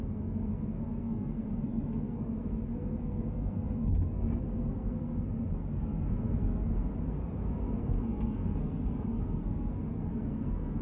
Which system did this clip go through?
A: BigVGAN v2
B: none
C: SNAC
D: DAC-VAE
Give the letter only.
C